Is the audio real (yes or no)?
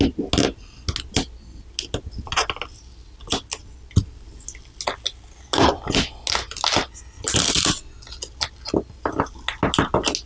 yes